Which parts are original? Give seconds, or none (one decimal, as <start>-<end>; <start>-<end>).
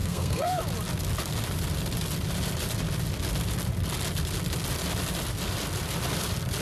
0.6-6.6